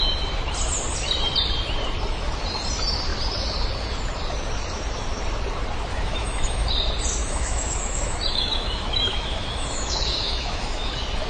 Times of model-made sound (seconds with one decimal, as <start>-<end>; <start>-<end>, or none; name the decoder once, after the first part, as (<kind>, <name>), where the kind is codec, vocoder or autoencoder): 5.9-6.7 (autoencoder, DAC-VAE); 7.2-10.9